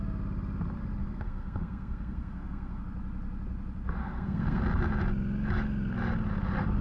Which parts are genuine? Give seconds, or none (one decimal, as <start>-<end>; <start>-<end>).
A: 0.0-1.0; 2.8-4.0; 4.6-6.8